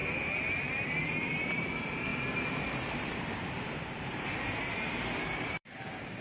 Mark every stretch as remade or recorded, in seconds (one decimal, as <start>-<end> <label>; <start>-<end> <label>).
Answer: 0.0-0.7 recorded; 0.7-6.2 remade